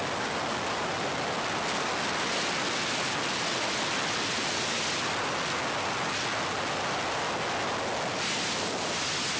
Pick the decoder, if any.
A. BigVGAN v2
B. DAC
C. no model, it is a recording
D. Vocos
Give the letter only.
C